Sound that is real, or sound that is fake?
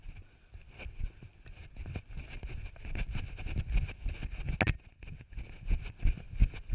real